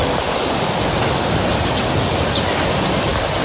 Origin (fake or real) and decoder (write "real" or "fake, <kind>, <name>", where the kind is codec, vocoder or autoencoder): real